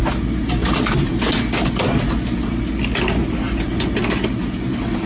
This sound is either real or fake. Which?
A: real